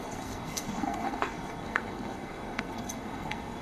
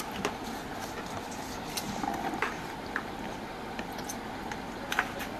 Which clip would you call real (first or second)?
second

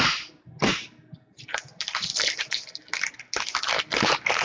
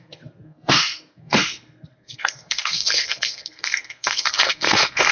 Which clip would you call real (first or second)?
first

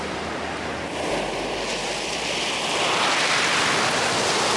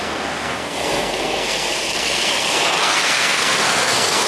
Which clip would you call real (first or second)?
first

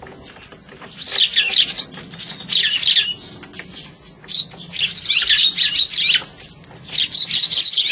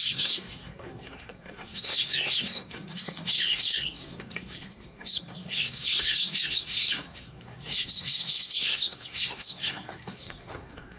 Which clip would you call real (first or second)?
first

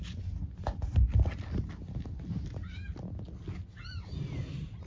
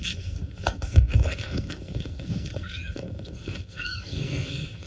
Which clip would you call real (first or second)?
first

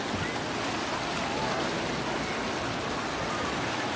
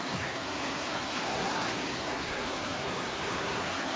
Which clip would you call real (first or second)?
first